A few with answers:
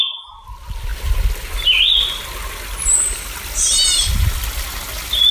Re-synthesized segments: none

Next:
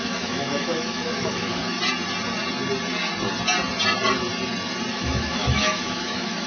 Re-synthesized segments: 0.0-1.6; 4.9-6.5

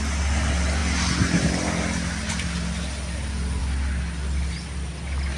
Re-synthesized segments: none

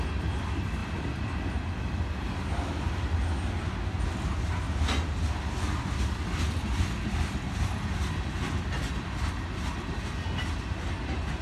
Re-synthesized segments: none

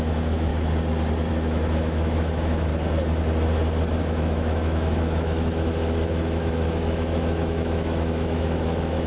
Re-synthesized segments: 0.0-0.5; 1.3-2.7; 4.0-9.1

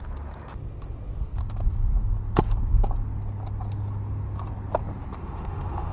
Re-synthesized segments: 5.2-5.9